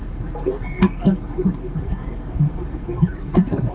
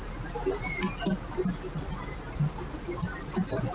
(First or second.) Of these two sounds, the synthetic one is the first